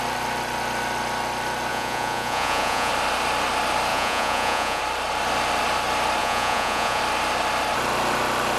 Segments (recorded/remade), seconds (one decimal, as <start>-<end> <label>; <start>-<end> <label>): 0.0-1.7 recorded; 1.7-2.9 remade; 2.9-3.9 recorded; 3.9-4.8 remade; 4.8-6.2 recorded; 6.2-7.0 remade; 7.0-8.6 recorded